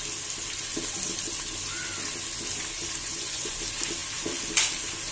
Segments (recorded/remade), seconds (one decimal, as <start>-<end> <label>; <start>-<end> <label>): 0.0-3.0 recorded; 3.0-3.6 remade; 3.6-5.1 recorded